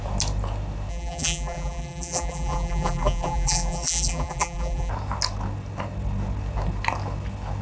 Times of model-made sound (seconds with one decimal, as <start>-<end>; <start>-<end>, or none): 0.9-4.9